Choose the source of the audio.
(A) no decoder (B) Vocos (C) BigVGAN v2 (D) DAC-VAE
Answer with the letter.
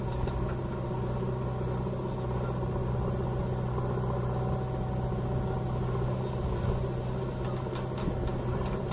A